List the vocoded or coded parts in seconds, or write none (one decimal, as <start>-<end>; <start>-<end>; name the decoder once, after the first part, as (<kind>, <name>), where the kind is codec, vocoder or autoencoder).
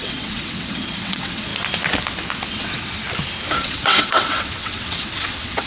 0.0-1.5 (vocoder, WaveNeXt); 2.5-3.0; 3.6-5.7